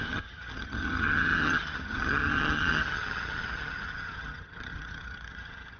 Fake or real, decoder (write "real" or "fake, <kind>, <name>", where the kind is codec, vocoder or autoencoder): fake, vocoder, HiFi-GAN